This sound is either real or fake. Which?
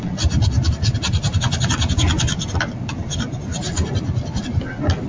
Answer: real